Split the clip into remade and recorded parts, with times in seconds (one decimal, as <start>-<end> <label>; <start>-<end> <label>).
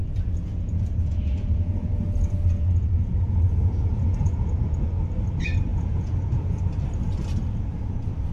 0.0-5.0 remade; 5.0-5.7 recorded; 5.7-6.6 remade; 6.6-8.3 recorded